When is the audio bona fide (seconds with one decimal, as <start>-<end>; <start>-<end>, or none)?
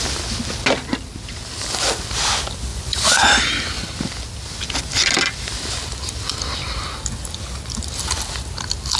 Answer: 0.0-2.7; 3.3-9.0